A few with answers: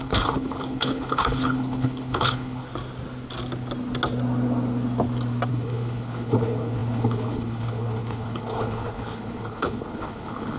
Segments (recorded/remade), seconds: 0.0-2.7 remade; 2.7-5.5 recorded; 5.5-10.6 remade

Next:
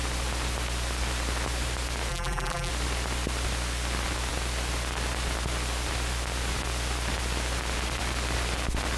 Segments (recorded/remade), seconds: 0.0-2.1 recorded; 2.1-2.7 remade; 2.7-9.0 recorded